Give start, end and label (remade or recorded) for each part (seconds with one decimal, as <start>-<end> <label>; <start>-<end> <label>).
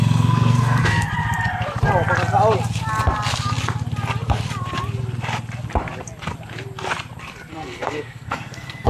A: 0.0-1.1 remade; 1.1-7.5 recorded; 7.5-8.9 remade